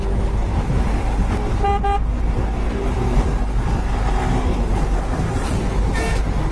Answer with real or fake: real